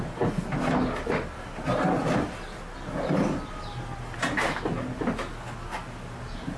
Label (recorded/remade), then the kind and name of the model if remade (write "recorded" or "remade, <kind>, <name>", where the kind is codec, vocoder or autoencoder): recorded